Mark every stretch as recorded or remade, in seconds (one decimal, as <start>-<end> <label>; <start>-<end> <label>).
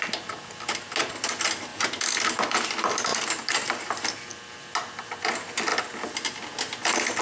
0.0-7.2 recorded